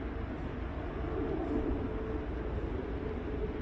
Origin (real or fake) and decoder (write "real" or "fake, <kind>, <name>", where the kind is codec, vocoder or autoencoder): real